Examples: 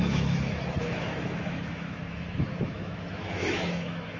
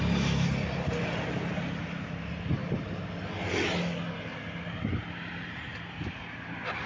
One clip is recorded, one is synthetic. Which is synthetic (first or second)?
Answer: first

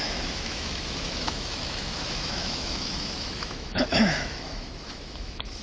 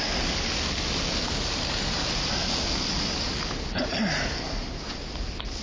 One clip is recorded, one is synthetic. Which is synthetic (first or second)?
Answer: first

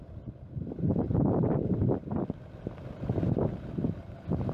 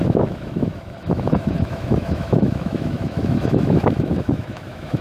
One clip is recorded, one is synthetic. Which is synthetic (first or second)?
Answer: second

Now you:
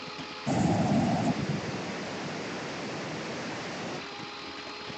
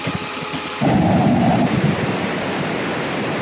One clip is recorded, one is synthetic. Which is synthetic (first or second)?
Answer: second